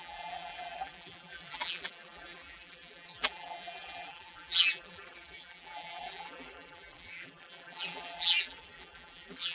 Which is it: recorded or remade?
remade